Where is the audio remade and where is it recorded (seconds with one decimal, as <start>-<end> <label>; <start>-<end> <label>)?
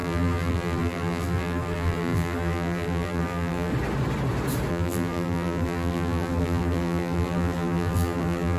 0.0-3.7 remade; 3.7-4.7 recorded; 4.7-8.6 remade